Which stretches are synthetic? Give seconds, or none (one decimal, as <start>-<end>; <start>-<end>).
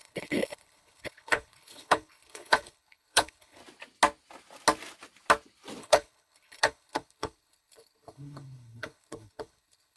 0.0-3.6; 5.8-10.0